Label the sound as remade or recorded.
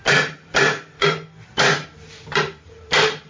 recorded